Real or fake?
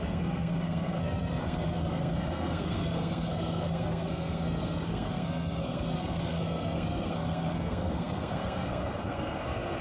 fake